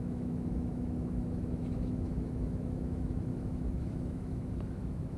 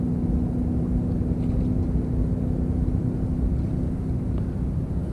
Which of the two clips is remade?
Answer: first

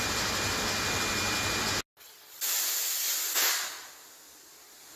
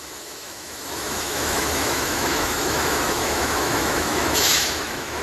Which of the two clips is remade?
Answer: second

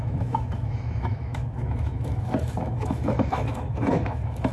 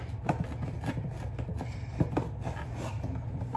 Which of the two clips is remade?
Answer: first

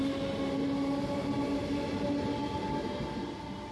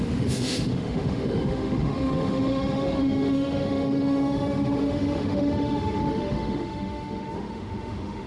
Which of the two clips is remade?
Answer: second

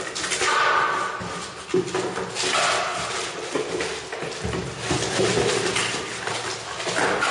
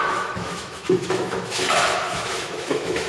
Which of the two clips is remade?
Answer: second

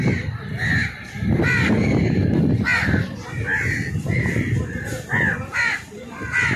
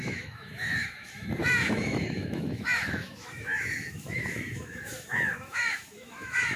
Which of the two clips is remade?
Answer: second